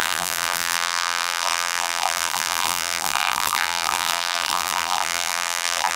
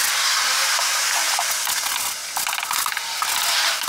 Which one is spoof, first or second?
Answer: first